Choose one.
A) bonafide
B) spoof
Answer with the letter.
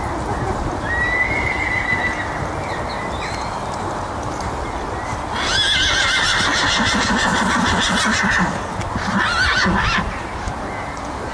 A